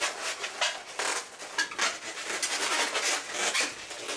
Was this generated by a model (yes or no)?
no